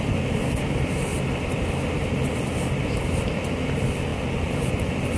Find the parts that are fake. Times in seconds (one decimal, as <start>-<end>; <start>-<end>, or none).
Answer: none